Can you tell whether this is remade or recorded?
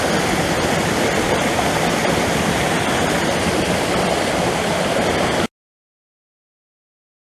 recorded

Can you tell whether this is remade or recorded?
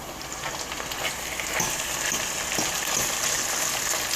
recorded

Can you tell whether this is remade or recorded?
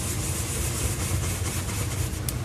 recorded